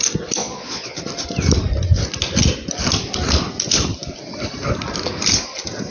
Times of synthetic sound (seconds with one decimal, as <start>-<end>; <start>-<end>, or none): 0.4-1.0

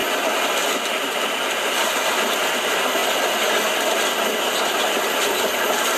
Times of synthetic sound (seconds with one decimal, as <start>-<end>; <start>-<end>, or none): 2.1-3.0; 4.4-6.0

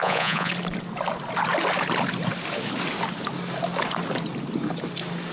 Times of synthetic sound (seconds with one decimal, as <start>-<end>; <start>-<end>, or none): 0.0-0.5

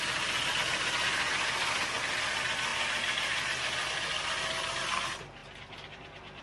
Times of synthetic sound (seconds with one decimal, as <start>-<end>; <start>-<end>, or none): none

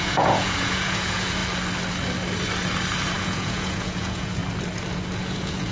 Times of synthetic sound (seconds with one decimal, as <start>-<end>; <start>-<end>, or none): 0.0-1.4; 3.2-4.4; 5.2-5.7

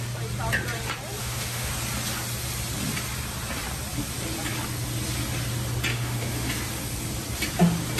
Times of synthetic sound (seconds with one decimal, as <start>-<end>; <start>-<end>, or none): 1.2-1.7; 5.9-6.5

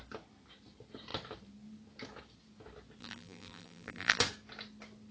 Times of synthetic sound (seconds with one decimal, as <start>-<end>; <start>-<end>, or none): 3.0-4.2

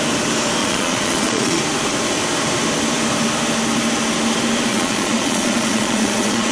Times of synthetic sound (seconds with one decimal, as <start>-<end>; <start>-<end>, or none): 0.6-1.6; 4.7-6.5